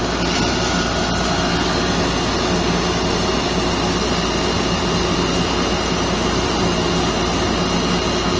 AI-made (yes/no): no